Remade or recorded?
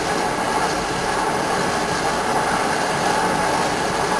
recorded